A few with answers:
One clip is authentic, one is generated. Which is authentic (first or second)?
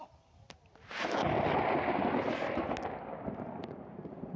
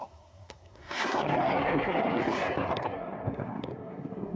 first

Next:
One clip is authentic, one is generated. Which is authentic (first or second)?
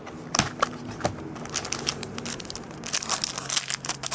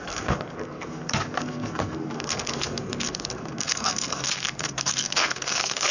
first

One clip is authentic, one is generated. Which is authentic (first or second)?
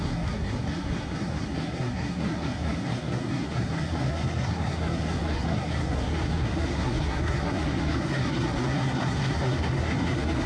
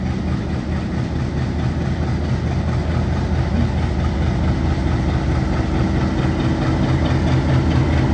second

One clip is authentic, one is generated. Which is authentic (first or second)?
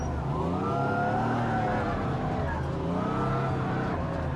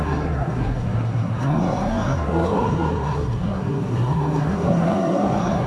first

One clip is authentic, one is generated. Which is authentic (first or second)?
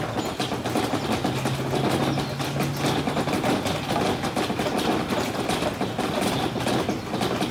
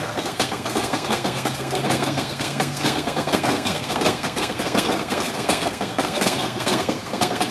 first